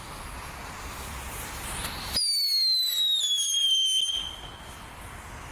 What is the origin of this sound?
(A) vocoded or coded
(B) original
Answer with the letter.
B